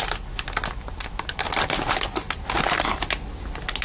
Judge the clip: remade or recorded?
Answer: recorded